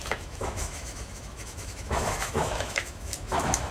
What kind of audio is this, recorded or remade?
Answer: remade